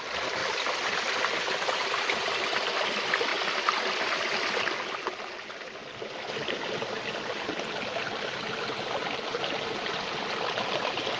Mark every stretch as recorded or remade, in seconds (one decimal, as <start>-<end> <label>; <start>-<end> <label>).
0.0-11.2 recorded